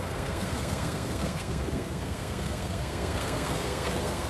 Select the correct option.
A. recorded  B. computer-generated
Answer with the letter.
B